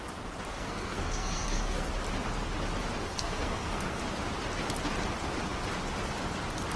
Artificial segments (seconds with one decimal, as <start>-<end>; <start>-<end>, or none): 0.5-1.9; 3.0-4.0

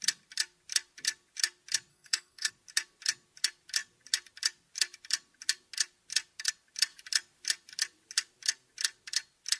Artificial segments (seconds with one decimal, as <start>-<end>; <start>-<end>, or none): 1.9-2.5

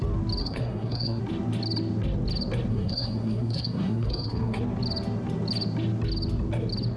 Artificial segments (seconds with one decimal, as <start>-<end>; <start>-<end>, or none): 0.4-1.2; 2.7-4.6

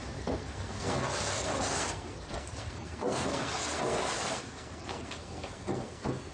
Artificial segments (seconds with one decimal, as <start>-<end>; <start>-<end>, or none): 0.0-6.3

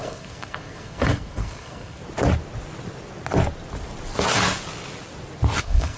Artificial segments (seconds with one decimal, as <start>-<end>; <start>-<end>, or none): 0.0-2.0; 5.6-6.0

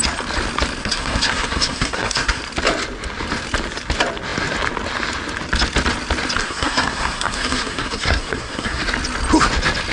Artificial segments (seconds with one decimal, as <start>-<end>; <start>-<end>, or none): 0.8-2.4; 6.4-8.8

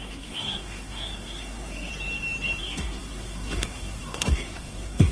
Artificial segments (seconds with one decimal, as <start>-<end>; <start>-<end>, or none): 0.0-1.9; 2.6-5.1

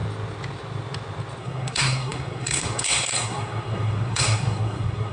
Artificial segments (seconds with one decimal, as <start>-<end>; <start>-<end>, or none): 1.4-5.1